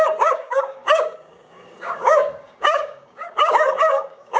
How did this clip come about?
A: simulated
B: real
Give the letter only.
A